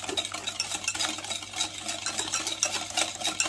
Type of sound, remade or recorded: recorded